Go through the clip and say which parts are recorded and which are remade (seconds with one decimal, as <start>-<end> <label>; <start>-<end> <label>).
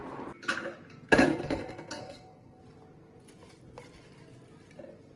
0.0-1.3 recorded; 1.3-2.6 remade; 2.6-5.2 recorded